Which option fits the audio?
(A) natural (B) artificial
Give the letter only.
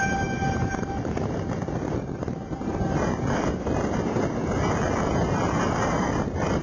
B